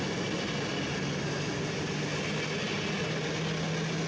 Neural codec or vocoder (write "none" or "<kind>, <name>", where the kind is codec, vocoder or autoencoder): none